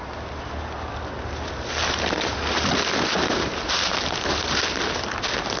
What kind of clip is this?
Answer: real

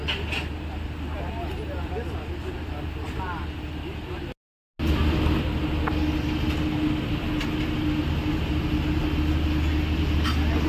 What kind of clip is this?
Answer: real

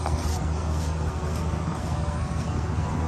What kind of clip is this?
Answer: fake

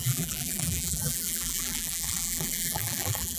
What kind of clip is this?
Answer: fake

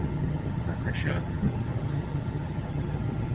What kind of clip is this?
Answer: fake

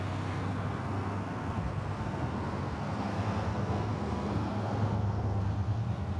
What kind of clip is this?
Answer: fake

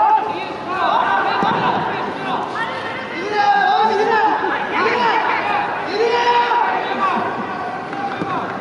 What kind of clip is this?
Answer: real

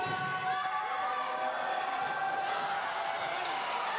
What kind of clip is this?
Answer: real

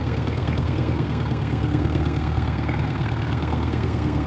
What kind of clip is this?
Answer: fake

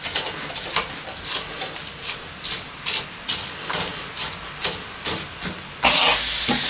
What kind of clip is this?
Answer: real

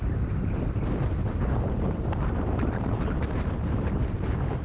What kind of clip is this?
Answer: fake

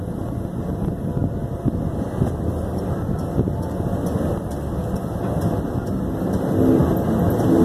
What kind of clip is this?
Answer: real